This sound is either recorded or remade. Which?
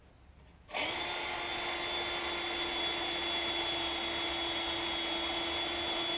recorded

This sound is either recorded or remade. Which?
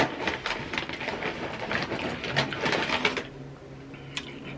recorded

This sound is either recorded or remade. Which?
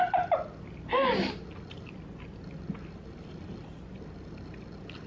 recorded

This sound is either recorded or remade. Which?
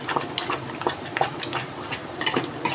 recorded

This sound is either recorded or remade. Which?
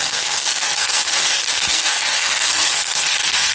remade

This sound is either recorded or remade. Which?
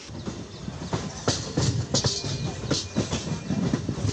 recorded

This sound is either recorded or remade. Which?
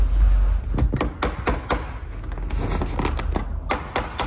recorded